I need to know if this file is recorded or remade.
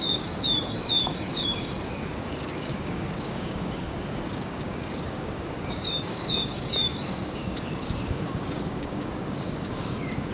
remade